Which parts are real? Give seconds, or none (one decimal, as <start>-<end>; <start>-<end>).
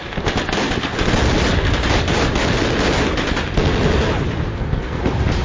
0.0-4.5; 5.0-5.4